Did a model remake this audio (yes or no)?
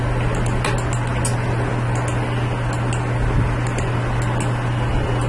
no